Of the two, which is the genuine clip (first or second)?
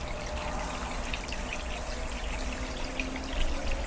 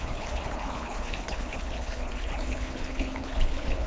first